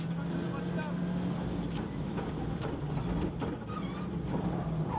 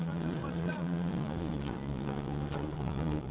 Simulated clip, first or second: second